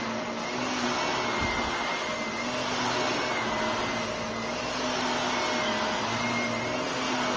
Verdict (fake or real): real